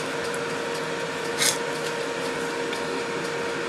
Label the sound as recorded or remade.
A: recorded